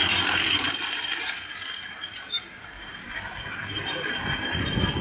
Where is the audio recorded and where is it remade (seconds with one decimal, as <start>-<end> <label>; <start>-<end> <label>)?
0.0-5.0 recorded